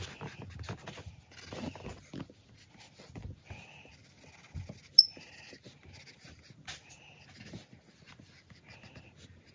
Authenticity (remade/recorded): recorded